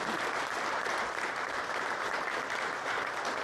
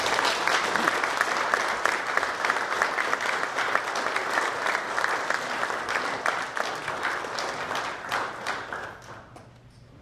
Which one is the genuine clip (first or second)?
second